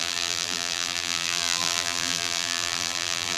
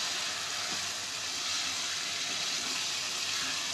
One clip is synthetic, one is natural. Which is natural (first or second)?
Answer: second